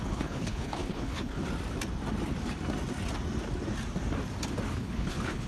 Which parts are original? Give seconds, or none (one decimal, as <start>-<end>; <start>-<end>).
1.4-4.7